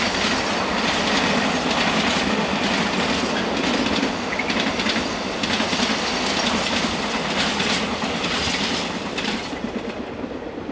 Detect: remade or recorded recorded